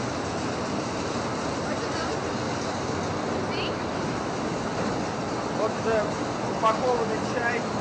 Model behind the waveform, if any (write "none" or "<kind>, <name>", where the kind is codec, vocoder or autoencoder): vocoder, BigVGAN v2